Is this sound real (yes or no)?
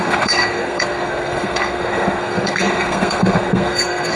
no